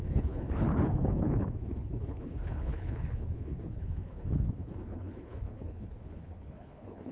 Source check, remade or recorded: remade